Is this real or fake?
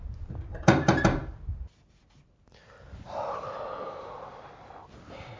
real